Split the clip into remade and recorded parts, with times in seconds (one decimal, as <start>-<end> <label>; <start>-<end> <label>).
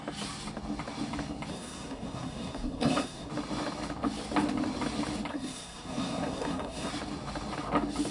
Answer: 0.0-1.5 recorded; 1.5-3.3 remade; 3.3-5.3 recorded; 5.3-6.9 remade; 6.9-8.1 recorded